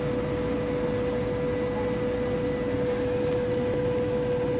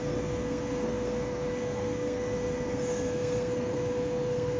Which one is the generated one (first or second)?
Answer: second